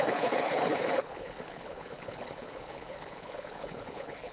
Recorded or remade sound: remade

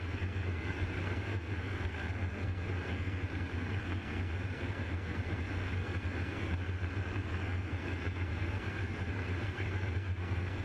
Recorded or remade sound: remade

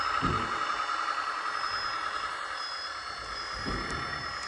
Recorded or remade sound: recorded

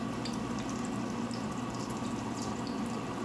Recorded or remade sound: recorded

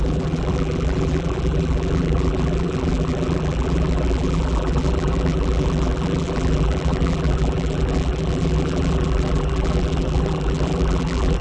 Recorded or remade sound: remade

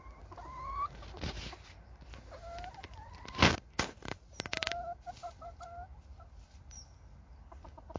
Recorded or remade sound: recorded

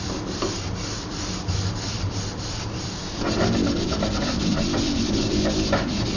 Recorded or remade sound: remade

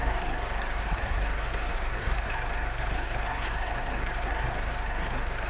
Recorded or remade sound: remade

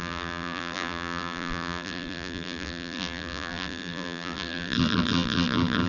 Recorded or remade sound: remade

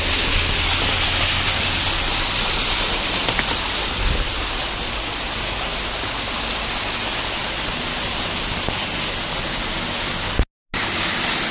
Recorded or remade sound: recorded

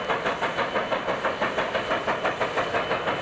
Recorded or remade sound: recorded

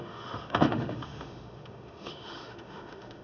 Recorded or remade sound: remade